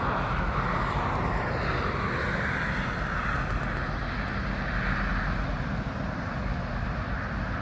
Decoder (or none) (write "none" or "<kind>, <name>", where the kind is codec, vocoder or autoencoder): none